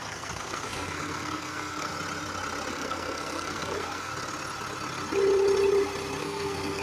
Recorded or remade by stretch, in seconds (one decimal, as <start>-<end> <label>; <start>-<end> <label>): 0.0-1.9 remade; 1.9-2.7 recorded; 2.7-4.1 remade; 4.1-6.2 recorded; 6.2-6.8 remade